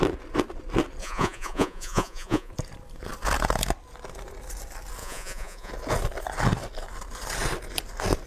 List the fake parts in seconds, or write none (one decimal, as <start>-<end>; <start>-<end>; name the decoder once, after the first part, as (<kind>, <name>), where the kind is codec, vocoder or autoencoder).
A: 1.0-2.5 (vocoder, Vocos); 5.0-5.7